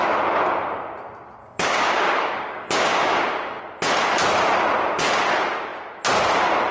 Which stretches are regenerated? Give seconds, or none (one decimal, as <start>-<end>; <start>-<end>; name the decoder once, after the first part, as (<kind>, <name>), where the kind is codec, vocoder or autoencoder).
1.4-3.6 (codec, DAC)